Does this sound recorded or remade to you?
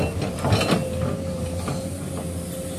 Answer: recorded